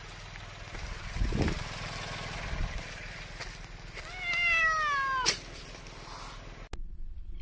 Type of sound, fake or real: real